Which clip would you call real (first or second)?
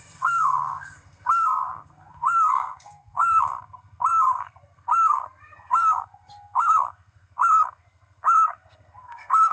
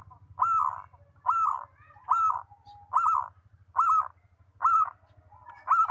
second